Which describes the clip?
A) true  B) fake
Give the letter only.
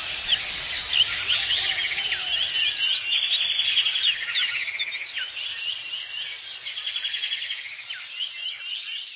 A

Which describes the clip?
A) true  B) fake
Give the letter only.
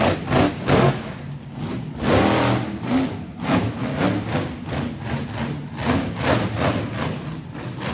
A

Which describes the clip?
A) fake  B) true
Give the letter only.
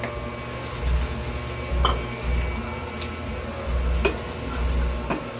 B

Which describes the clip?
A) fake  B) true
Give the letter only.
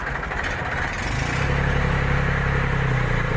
B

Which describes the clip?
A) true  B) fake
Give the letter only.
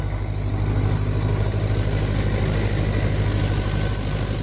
A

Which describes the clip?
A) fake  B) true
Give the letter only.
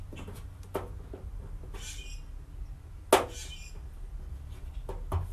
B